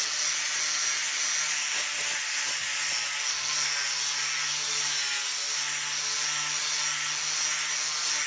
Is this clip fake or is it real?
real